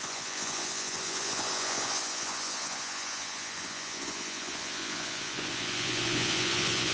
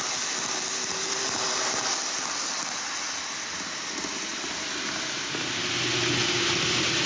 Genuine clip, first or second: second